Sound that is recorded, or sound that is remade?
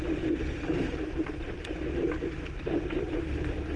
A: recorded